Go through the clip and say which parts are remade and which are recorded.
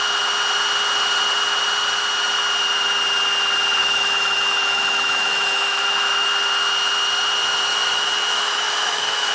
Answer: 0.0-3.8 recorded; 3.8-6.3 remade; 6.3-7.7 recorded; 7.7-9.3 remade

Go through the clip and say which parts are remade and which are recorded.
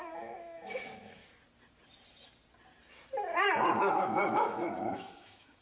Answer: 0.0-1.2 remade; 1.2-3.8 recorded; 3.8-5.6 remade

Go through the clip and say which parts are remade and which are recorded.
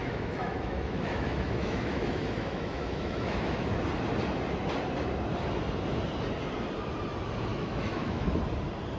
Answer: 0.0-3.7 remade; 3.7-7.5 recorded; 7.5-8.3 remade; 8.3-9.0 recorded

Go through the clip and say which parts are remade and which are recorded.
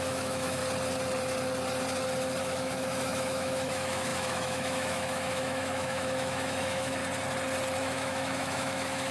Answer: 0.0-0.6 remade; 0.6-2.4 recorded; 2.4-7.0 remade; 7.0-7.8 recorded; 7.8-9.1 remade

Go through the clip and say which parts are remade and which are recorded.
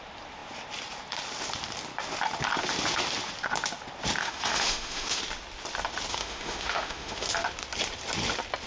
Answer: 0.0-4.2 recorded; 4.2-5.2 remade; 5.2-6.1 recorded; 6.1-7.3 remade; 7.3-8.7 recorded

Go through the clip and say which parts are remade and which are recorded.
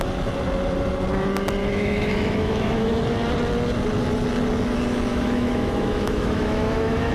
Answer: 0.0-1.6 recorded; 1.6-3.0 remade; 3.0-5.1 recorded; 5.1-7.1 remade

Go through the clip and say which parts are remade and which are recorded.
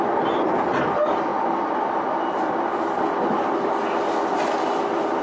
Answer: 0.0-5.2 recorded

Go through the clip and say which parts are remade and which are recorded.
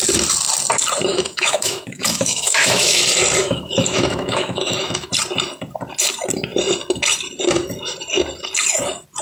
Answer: 0.0-1.1 recorded; 1.1-3.0 remade; 3.0-3.4 recorded; 3.4-5.1 remade; 5.1-9.2 recorded